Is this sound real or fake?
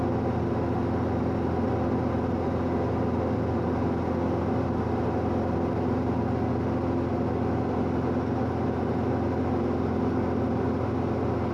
real